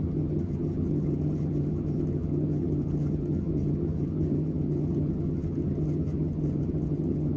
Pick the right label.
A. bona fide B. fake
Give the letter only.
B